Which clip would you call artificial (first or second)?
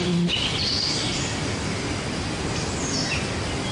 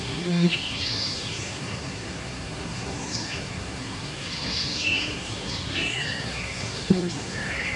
second